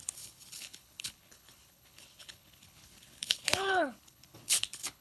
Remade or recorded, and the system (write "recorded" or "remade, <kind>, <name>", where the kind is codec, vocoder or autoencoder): remade, codec, HILCodec